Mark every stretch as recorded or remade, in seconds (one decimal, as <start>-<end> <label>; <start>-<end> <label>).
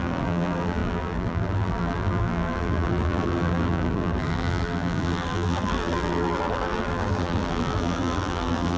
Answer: 0.0-8.8 remade